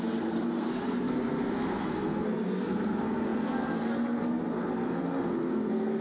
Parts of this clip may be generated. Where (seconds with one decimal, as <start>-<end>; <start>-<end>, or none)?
0.0-6.0